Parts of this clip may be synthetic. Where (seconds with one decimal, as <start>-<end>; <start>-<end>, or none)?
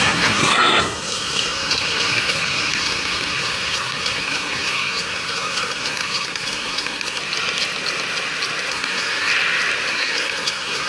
0.0-7.2; 8.7-9.3; 9.9-10.9